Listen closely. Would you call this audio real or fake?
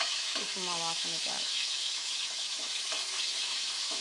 fake